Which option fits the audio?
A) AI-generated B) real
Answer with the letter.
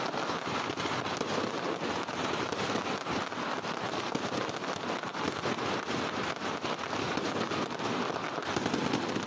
B